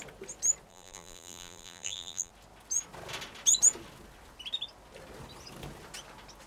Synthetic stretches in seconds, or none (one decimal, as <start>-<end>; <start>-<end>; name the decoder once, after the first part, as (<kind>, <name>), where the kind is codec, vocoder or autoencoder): 0.7-2.3 (vocoder, BigVGAN v2)